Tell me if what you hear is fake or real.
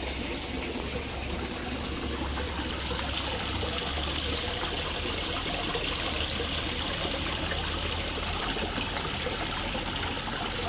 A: real